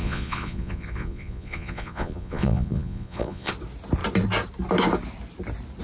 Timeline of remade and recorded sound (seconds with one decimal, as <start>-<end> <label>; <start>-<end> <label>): 0.0-3.5 remade; 3.5-5.8 recorded